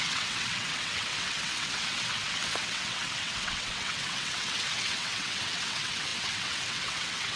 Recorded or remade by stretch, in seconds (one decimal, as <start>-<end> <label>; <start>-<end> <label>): 0.0-7.4 remade